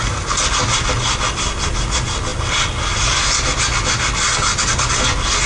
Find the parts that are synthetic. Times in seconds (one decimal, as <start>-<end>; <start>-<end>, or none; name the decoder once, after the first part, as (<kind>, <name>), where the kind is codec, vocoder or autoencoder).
none